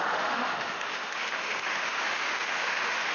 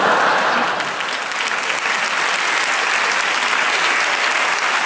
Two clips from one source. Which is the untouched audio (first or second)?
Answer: second